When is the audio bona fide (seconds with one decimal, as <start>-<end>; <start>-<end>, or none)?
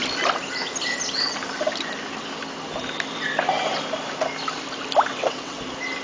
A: 0.0-5.1; 5.6-6.0